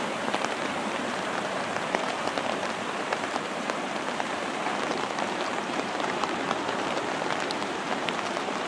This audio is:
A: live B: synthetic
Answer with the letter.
B